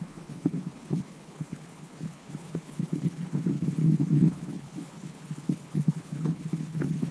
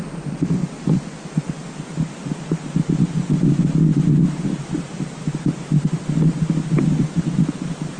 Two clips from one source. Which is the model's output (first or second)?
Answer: first